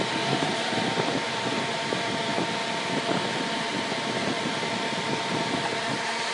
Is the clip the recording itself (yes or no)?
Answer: yes